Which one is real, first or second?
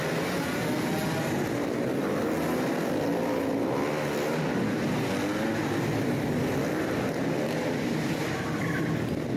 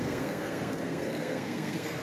first